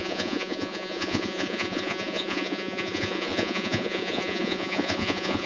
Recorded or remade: remade